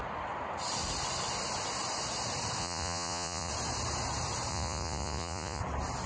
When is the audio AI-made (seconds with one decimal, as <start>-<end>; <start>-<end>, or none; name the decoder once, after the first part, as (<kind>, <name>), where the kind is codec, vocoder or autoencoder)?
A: 2.6-3.5 (vocoder, Vocos); 4.5-5.6